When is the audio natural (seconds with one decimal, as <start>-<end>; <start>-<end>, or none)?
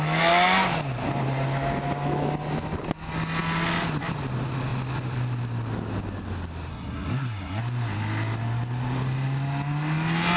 0.0-6.7; 7.6-10.4